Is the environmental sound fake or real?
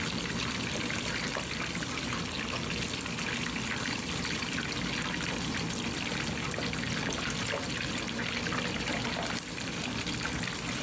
real